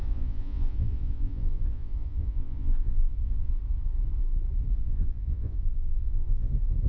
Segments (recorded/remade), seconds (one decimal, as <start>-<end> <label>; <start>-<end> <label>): 0.0-3.5 remade; 3.5-4.8 recorded; 4.8-6.5 remade; 6.5-6.9 recorded